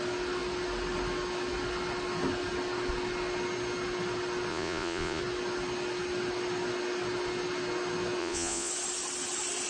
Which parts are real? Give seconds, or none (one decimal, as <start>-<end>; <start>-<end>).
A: 0.0-4.5; 5.2-8.2; 8.7-9.7